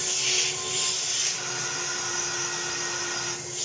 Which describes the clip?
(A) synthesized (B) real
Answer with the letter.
B